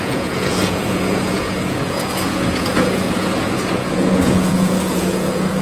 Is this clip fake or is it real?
fake